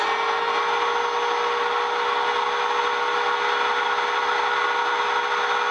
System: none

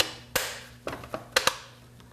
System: none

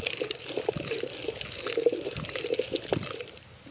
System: none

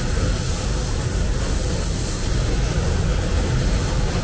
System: none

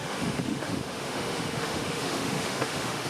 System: autoencoder, DAC-VAE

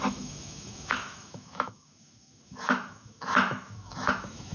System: autoencoder, DAC-VAE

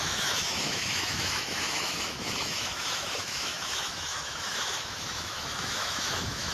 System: autoencoder, DAC-VAE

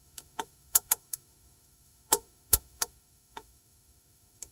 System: autoencoder, DAC-VAE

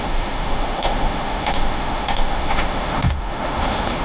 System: autoencoder, DAC-VAE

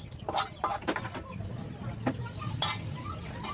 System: none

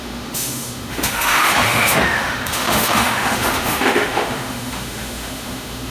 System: autoencoder, DAC-VAE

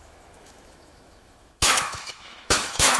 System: autoencoder, DAC-VAE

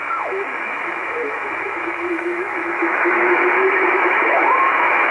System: autoencoder, DAC-VAE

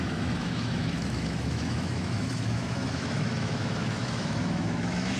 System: autoencoder, DAC-VAE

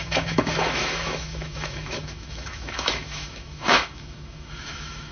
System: autoencoder, DAC-VAE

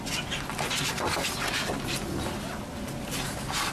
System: none